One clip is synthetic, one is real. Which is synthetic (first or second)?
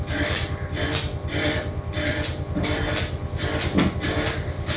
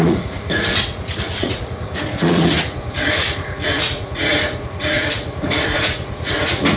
second